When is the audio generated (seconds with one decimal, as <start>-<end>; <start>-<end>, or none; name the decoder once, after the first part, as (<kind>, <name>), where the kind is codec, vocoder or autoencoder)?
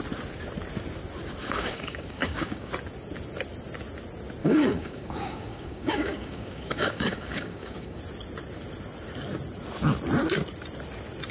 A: 1.4-2.7 (codec, DAC); 4.4-8.0